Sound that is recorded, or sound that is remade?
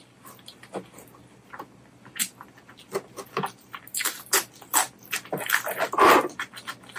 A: recorded